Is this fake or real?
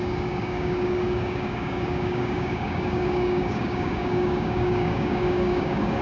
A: fake